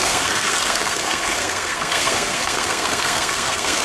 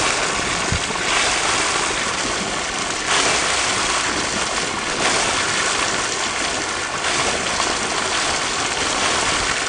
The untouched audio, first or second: second